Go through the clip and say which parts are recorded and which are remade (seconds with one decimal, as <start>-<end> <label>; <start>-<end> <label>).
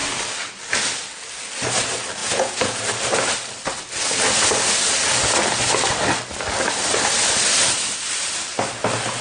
0.0-2.2 recorded; 2.2-2.8 remade; 2.8-9.2 recorded